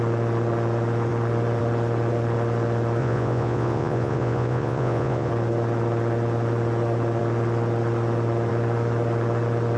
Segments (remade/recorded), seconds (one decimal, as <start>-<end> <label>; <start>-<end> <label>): 0.0-3.0 recorded; 3.0-5.3 remade; 5.3-9.8 recorded